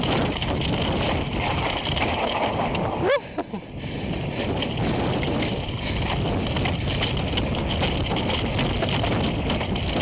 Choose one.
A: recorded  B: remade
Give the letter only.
A